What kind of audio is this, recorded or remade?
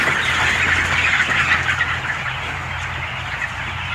recorded